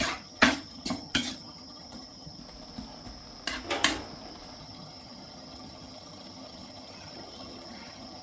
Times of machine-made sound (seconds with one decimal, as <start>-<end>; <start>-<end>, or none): 0.0-2.4; 4.6-8.2